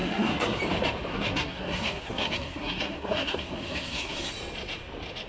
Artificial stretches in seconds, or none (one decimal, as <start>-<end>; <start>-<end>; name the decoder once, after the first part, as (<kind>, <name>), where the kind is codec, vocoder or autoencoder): 0.0-0.6 (codec, SNAC); 1.1-4.3